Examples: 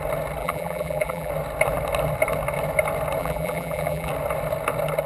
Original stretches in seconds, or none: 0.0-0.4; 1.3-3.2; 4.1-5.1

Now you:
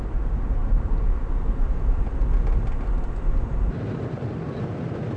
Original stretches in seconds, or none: 0.0-0.6; 2.3-5.2

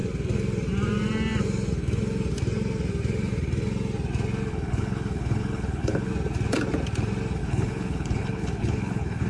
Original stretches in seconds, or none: 0.0-4.5; 6.1-7.4

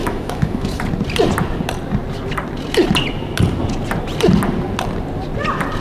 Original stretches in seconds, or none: 0.8-5.8

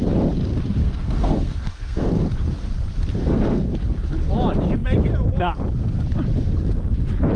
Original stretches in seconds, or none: 0.0-0.8; 2.1-3.2; 3.7-7.4

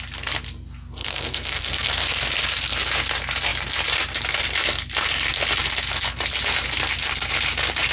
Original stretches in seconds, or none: 0.0-1.0; 1.9-7.9

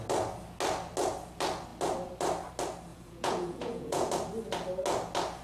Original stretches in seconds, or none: 0.0-2.9; 4.1-5.4

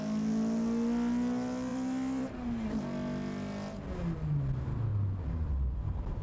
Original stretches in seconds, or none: 0.0-1.7; 2.6-4.9; 5.8-6.2